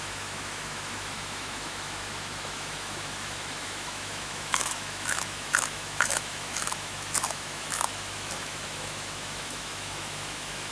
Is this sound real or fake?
fake